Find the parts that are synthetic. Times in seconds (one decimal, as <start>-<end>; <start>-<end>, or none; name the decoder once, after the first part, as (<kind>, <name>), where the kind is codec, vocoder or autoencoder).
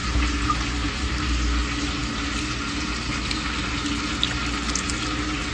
none